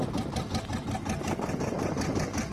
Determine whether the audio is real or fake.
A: real